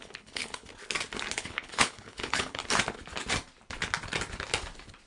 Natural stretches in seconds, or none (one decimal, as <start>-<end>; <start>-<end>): 0.7-1.3; 2.6-5.1

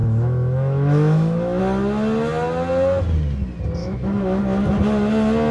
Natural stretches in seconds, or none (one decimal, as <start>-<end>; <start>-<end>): 1.6-3.8; 4.4-5.5